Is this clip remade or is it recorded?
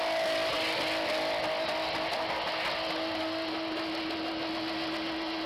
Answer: recorded